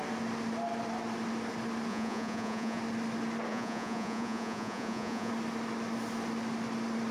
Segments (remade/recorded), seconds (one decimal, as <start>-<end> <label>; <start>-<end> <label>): 0.0-1.9 recorded; 1.9-2.8 remade; 2.8-3.5 recorded; 3.5-5.3 remade; 5.3-7.1 recorded